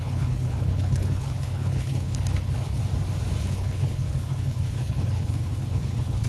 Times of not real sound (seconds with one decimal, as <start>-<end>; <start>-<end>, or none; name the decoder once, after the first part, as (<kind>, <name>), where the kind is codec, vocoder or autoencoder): 0.0-2.8 (codec, HILCodec); 3.4-6.3